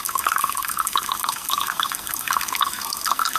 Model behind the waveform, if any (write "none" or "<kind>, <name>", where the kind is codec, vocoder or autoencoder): codec, SNAC